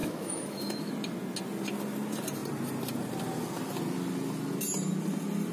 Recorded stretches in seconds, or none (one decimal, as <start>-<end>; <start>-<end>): 0.9-5.5